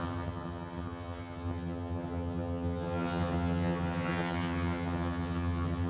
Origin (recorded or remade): remade